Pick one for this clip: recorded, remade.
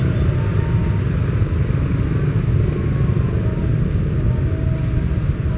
recorded